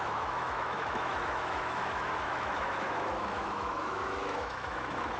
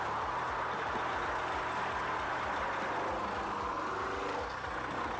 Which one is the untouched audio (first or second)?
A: second